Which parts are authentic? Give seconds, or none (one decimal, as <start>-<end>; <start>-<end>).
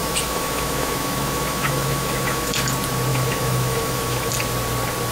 2.5-3.1; 4.3-5.1